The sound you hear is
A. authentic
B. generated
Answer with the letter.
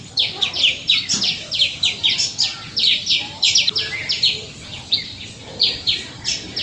A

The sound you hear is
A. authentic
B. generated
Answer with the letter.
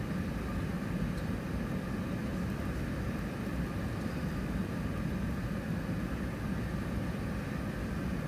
A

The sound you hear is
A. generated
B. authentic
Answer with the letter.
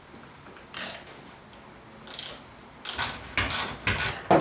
B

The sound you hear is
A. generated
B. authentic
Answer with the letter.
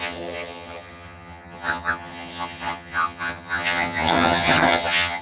A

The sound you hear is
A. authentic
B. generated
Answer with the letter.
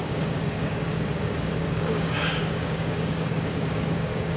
B